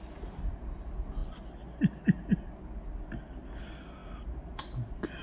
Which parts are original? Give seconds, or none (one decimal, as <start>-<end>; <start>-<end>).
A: 0.0-5.2